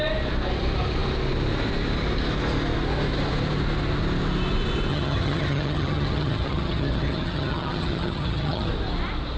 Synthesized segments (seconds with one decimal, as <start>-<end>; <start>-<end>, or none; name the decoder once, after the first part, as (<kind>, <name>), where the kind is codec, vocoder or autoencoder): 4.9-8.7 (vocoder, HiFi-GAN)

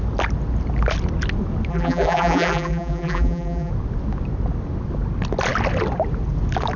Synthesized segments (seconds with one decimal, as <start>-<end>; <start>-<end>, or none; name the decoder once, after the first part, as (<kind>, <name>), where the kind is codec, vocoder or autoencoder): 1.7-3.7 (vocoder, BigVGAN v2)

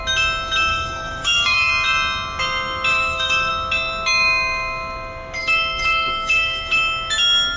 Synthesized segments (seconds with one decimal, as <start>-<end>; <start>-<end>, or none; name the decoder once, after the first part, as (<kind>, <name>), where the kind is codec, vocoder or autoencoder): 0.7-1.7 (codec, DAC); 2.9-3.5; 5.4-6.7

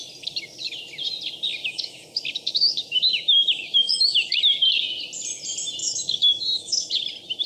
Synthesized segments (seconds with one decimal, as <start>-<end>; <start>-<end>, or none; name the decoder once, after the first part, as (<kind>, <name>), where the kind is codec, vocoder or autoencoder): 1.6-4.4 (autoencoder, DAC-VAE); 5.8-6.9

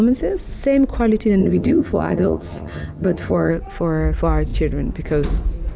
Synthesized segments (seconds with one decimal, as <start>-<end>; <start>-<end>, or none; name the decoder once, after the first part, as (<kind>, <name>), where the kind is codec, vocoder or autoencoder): 1.4-3.5 (vocoder, HiFi-GAN)

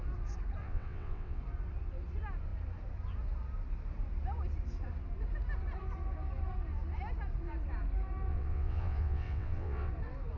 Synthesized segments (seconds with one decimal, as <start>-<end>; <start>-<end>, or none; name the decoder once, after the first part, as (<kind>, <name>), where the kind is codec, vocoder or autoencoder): 0.6-1.4 (vocoder, WaveNeXt); 8.3-9.9

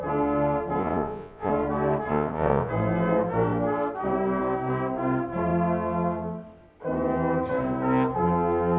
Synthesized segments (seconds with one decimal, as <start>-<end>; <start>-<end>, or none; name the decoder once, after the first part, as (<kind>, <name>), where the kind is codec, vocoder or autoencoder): 0.8-1.5 (vocoder, Vocos); 2.1-2.7